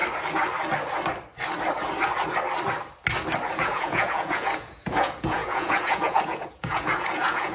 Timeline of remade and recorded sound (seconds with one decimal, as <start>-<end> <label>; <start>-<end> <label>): 0.0-3.5 recorded; 3.5-7.5 remade